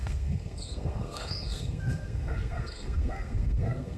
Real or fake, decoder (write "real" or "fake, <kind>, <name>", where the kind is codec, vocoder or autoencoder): fake, codec, SNAC